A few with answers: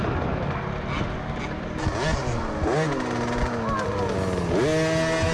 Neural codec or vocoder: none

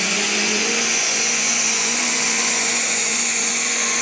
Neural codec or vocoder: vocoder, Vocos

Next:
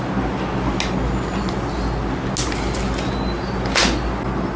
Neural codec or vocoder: none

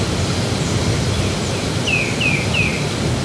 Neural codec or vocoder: none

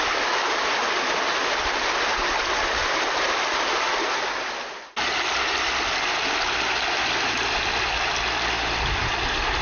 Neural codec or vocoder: none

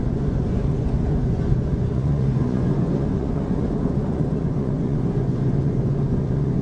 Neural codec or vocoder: vocoder, Vocos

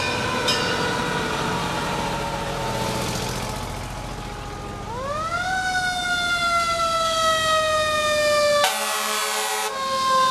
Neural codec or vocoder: none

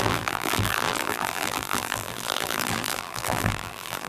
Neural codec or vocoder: vocoder, BigVGAN v2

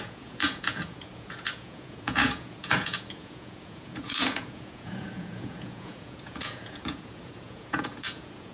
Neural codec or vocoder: vocoder, Vocos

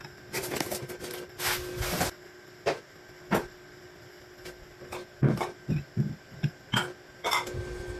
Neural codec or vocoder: none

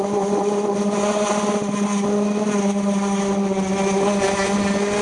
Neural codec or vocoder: none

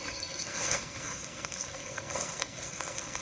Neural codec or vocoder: codec, SNAC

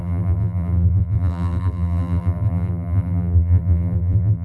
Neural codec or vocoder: vocoder, BigVGAN v2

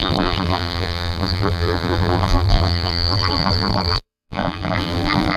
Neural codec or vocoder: vocoder, BigVGAN v2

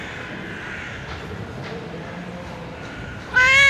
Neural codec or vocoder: none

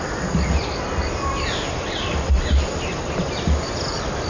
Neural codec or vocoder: none